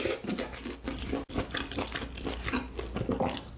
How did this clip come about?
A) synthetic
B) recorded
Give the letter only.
B